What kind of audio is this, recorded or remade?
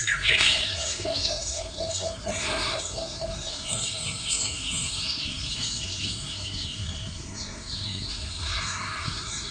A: remade